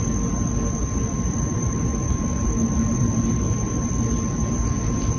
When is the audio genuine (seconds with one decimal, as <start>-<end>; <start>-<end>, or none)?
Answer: 0.0-0.8; 3.9-5.2